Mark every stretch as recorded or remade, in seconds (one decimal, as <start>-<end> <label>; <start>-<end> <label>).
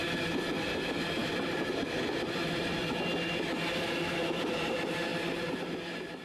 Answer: 0.0-6.2 recorded